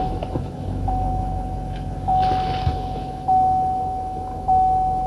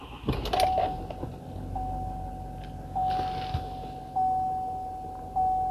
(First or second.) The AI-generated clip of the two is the first